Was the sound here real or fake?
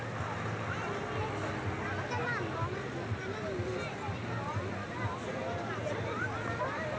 real